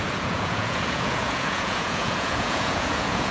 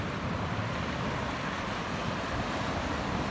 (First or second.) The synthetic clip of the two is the first